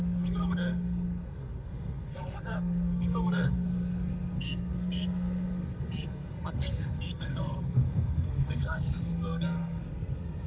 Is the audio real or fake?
fake